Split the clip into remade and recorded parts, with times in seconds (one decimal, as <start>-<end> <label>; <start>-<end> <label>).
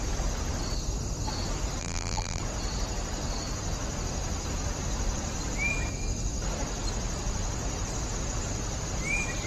0.0-1.8 recorded; 1.8-2.4 remade; 2.4-9.5 recorded